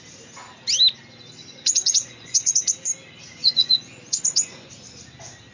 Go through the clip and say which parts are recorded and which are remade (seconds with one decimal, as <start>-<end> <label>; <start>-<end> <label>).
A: 0.0-1.4 recorded; 1.4-2.7 remade; 2.7-3.3 recorded; 3.3-4.7 remade; 4.7-5.5 recorded